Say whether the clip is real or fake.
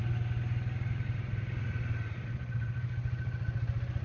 real